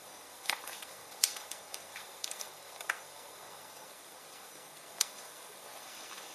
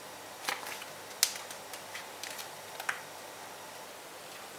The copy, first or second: first